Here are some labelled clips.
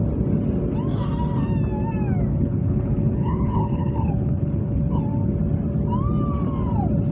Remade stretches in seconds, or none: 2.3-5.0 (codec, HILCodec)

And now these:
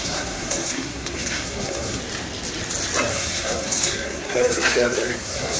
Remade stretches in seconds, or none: 0.0-2.0 (codec, SNAC); 3.1-5.6

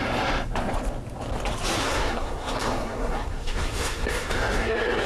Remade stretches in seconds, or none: 1.8-5.1 (codec, SNAC)